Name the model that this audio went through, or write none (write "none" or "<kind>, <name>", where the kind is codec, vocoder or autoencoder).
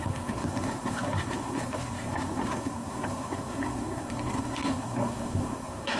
codec, SNAC